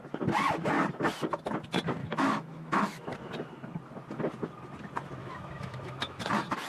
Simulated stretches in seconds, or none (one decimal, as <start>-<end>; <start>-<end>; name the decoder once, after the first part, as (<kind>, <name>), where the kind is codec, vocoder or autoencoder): 2.0-3.1 (autoencoder, DAC-VAE); 5.2-6.2